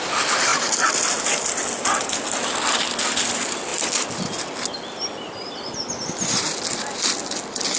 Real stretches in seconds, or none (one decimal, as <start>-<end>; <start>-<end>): 0.0-7.8